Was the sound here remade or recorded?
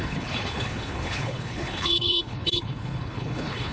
remade